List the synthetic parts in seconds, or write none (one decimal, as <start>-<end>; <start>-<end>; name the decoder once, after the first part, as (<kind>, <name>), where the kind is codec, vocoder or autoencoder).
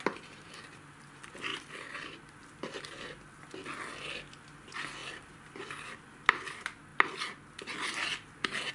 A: 5.0-5.6 (vocoder, BigVGAN v2)